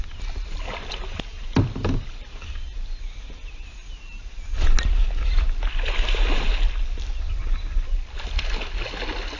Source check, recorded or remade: recorded